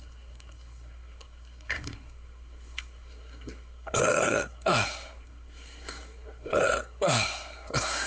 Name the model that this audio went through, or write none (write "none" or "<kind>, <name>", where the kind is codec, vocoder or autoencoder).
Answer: codec, SNAC